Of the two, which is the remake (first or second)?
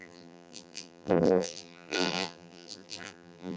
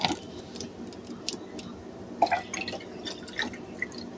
first